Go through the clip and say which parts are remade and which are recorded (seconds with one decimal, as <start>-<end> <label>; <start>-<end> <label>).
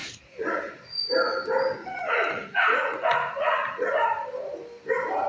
0.0-1.0 remade; 1.0-1.8 recorded; 1.8-3.9 remade; 3.9-5.3 recorded